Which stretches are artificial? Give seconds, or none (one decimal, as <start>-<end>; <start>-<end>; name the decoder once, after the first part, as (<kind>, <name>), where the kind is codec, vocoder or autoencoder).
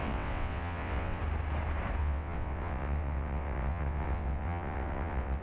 0.0-1.2 (vocoder, WaveNeXt); 2.0-5.4